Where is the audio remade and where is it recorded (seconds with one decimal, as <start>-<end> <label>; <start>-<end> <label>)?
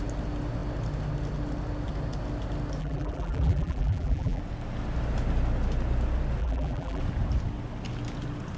0.0-2.8 recorded; 2.8-4.4 remade; 4.4-6.4 recorded; 6.4-7.0 remade; 7.0-8.6 recorded